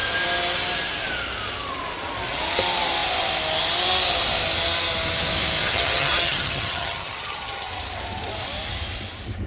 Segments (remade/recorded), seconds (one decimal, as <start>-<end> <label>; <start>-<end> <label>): 0.0-5.6 recorded; 5.6-7.7 remade; 7.7-9.5 recorded